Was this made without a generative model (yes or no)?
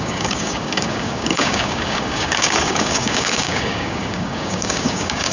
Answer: no